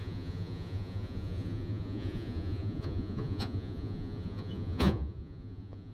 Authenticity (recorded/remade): remade